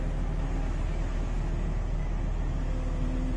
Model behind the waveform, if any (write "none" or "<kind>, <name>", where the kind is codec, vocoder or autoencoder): none